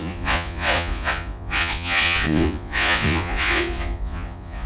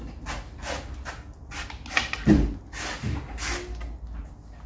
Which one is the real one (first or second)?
second